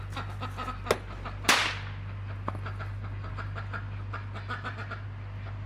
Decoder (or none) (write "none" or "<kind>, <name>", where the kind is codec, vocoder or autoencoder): none